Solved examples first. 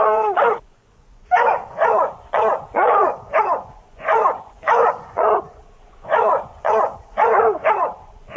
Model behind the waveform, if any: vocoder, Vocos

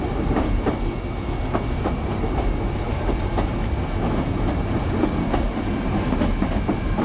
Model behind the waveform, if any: none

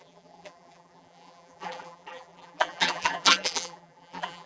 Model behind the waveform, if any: vocoder, BigVGAN v2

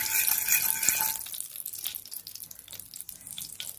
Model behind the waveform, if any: none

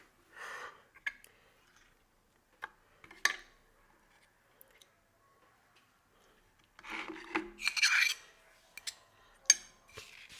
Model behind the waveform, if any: none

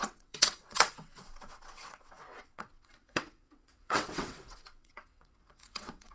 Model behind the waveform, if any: vocoder, WaveNeXt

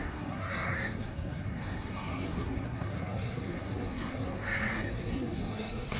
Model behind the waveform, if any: codec, SNAC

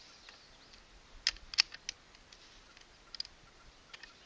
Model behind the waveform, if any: none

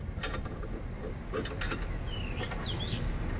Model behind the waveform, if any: none